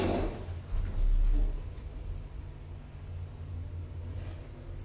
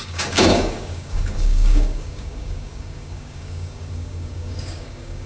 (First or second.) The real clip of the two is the first